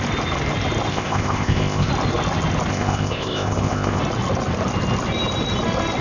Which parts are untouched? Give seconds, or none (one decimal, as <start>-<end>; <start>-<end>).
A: 0.0-0.9; 1.9-2.7; 4.0-6.0